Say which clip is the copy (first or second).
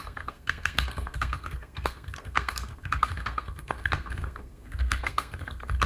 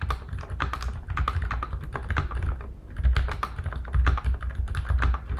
first